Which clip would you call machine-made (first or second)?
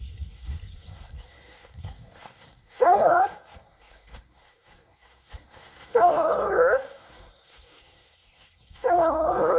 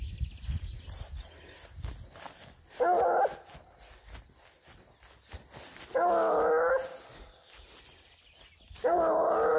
first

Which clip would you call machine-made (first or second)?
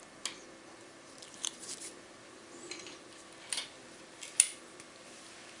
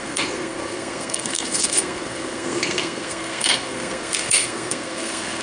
second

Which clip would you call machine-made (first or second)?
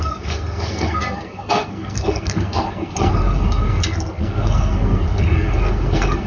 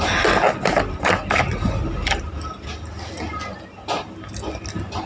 first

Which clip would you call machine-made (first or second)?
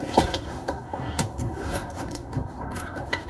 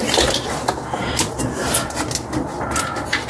first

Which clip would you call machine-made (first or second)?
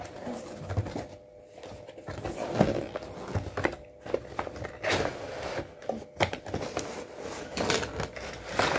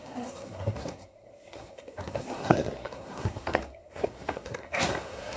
second